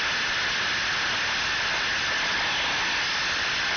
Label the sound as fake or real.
real